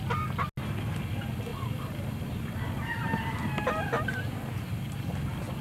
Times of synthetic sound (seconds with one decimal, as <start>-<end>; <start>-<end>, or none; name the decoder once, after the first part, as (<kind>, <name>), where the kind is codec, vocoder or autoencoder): none